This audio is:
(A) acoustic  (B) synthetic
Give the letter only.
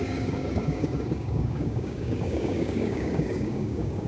B